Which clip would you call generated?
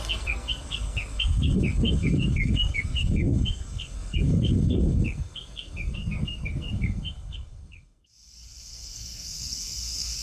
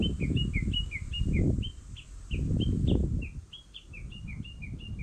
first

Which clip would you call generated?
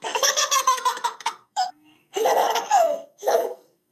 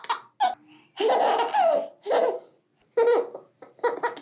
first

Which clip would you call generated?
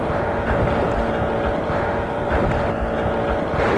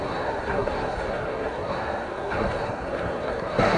second